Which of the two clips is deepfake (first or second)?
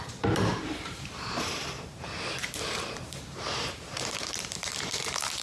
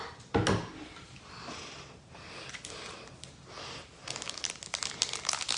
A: first